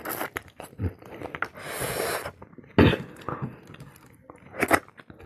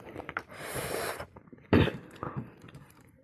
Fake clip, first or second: second